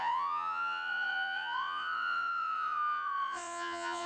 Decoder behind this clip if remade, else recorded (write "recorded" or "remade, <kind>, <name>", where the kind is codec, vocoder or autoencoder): remade, vocoder, Vocos